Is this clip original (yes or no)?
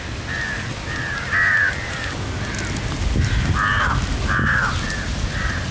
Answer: yes